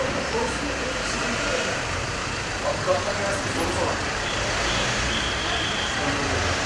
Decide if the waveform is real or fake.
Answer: fake